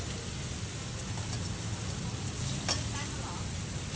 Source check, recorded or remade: recorded